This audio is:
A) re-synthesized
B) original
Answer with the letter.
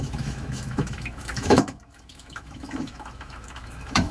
A